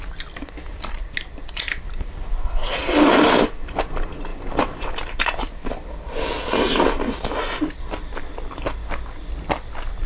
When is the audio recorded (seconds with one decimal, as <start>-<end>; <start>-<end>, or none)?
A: 0.0-10.1